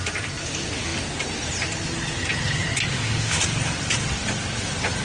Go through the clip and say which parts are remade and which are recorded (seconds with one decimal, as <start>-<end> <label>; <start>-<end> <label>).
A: 0.0-2.9 recorded; 2.9-3.4 remade; 3.4-5.0 recorded